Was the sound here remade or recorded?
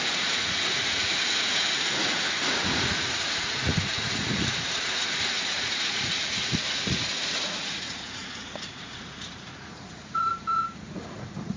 remade